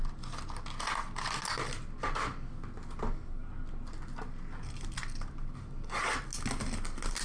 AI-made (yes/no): no